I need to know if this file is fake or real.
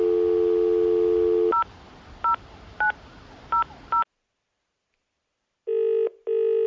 real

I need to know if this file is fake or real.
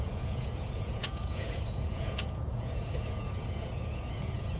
fake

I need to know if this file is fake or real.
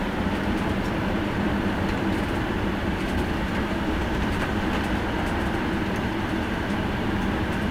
fake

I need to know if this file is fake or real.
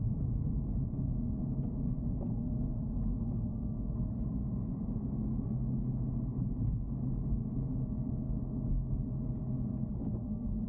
real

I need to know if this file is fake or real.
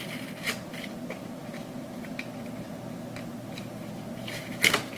real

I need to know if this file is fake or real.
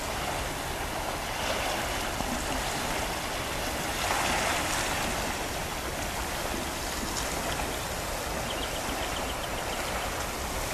real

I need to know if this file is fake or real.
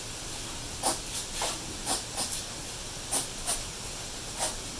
real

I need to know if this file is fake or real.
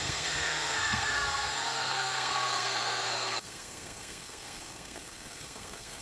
fake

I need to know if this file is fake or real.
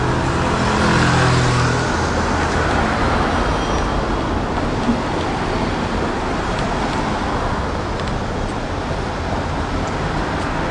real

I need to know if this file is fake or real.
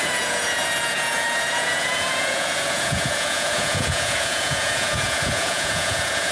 fake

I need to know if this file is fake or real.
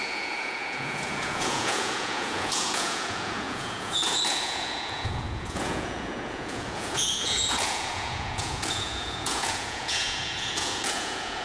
fake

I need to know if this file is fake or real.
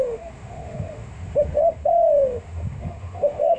fake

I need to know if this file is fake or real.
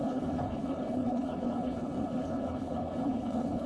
fake